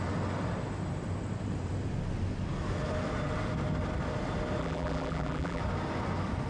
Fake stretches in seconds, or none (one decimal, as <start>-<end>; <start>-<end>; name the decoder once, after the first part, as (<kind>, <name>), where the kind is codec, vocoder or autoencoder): 4.6-5.6 (vocoder, BigVGAN v2)